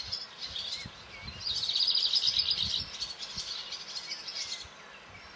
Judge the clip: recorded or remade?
recorded